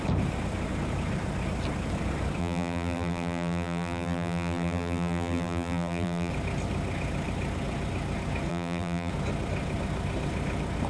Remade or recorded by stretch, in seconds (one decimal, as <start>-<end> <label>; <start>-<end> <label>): 0.0-2.4 recorded; 2.4-6.3 remade; 6.3-8.5 recorded; 8.5-9.1 remade; 9.1-10.9 recorded